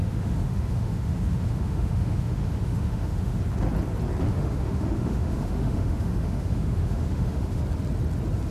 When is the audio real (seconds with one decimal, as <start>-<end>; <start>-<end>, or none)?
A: 3.4-4.3; 7.6-8.5